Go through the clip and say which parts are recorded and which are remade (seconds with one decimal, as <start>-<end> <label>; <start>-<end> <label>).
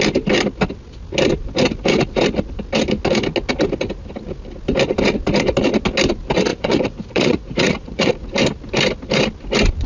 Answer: 0.0-6.5 recorded; 6.5-8.1 remade; 8.1-9.9 recorded